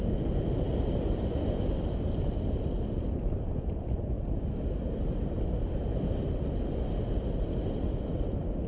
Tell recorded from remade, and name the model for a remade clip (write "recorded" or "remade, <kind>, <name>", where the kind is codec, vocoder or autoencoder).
recorded